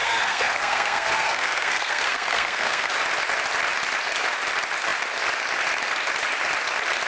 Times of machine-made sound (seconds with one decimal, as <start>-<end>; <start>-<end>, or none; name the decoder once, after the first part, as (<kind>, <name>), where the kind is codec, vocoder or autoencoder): 0.0-2.9 (codec, SNAC)